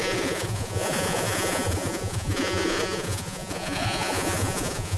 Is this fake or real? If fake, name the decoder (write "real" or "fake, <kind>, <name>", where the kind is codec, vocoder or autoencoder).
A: fake, vocoder, Vocos